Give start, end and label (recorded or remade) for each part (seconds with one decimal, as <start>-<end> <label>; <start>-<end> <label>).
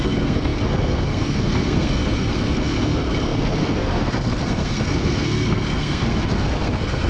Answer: 0.0-7.1 remade